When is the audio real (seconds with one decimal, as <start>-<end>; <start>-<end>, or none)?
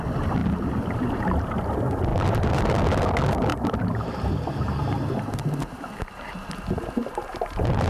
0.0-0.4; 1.6-2.1; 2.6-3.5